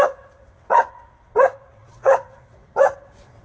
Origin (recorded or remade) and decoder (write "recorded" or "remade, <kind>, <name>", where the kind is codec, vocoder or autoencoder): remade, vocoder, WaveNeXt